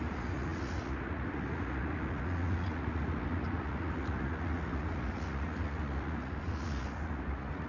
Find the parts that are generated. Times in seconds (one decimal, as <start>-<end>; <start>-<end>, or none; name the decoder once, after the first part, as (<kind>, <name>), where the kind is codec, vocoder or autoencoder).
0.0-7.7 (vocoder, Vocos)